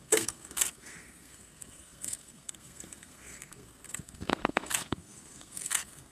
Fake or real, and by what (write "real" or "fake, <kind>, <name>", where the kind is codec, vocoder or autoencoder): fake, codec, SNAC